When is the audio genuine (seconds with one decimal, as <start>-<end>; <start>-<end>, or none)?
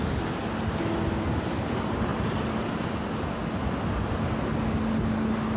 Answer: 0.0-5.6